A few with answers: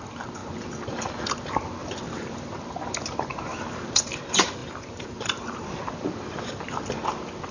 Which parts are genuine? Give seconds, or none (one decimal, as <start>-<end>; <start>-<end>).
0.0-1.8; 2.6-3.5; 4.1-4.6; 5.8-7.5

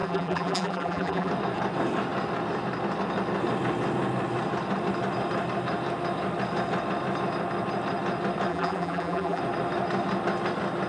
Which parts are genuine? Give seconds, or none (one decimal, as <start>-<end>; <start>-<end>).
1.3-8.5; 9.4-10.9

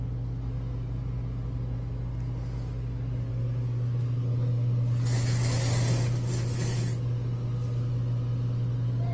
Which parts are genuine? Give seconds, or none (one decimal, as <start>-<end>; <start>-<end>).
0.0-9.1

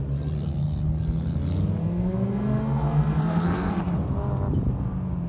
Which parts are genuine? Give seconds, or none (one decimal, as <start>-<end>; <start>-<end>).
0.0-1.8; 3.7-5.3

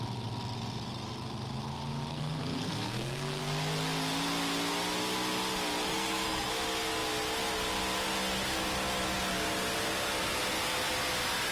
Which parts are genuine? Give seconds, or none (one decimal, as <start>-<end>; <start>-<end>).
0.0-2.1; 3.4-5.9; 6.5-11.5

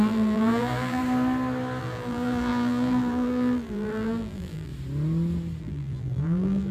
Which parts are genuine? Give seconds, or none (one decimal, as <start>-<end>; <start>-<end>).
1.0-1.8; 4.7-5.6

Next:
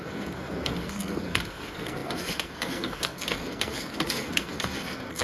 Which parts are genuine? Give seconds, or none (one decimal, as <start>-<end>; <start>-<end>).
none

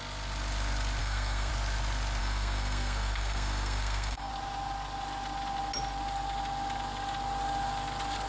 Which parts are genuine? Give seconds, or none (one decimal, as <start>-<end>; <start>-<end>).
0.0-1.0; 1.5-2.2; 4.3-8.3